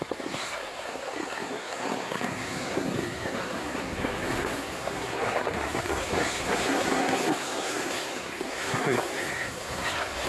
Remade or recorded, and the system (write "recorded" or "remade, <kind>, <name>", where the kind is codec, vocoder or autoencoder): remade, codec, SNAC